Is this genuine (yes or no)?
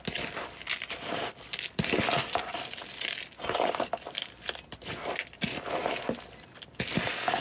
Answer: yes